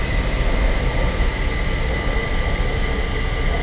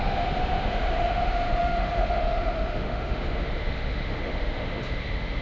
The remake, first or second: second